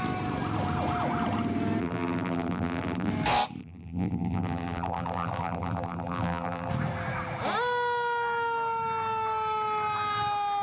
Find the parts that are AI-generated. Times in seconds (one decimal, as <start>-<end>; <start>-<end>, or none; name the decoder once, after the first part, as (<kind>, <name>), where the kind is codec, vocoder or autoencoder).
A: 1.8-3.1 (vocoder, BigVGAN v2); 3.6-6.7